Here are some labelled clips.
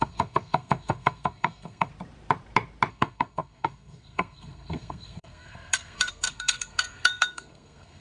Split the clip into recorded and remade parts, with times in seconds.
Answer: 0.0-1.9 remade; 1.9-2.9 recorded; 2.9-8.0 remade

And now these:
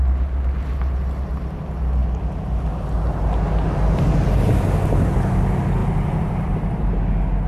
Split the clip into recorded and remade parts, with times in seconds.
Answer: 0.0-2.0 recorded; 2.0-2.6 remade; 2.6-5.8 recorded; 5.8-6.9 remade; 6.9-7.5 recorded

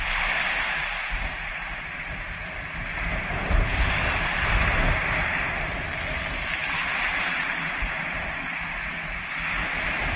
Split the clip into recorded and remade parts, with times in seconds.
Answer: 0.0-0.9 recorded; 0.9-1.5 remade; 1.5-2.9 recorded; 2.9-5.5 remade; 5.5-6.6 recorded; 6.6-8.4 remade; 8.4-10.2 recorded

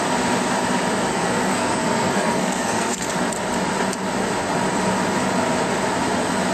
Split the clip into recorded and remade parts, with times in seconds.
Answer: 0.0-1.1 recorded; 1.1-3.1 remade; 3.1-6.5 recorded